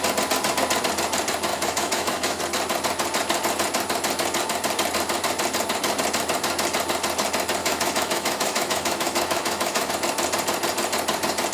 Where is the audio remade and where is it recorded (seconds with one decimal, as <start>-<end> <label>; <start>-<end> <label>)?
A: 0.0-1.5 recorded; 1.5-2.4 remade; 2.4-7.6 recorded; 7.6-9.9 remade; 9.9-11.5 recorded